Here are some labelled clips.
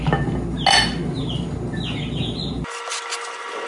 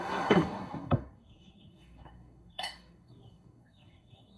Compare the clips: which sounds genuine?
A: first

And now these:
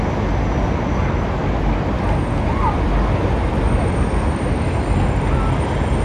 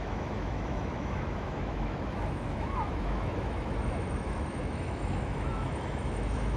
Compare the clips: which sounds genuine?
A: first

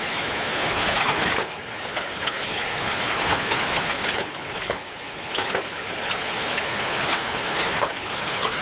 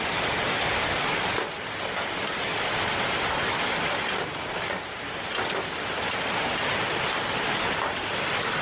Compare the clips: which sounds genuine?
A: second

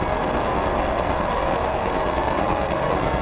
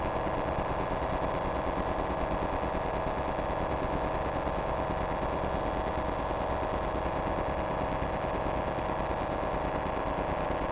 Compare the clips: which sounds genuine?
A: second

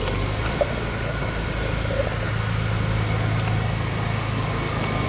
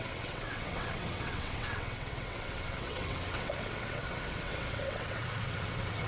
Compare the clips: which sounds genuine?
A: first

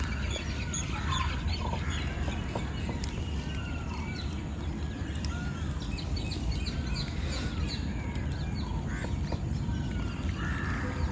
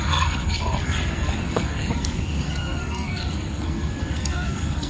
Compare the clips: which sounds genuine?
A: first